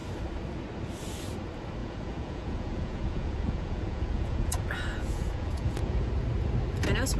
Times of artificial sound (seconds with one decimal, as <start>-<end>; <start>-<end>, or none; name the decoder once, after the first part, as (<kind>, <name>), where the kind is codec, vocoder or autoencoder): 1.8-6.1 (vocoder, Vocos)